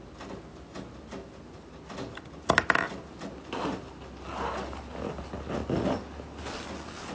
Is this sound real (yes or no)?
yes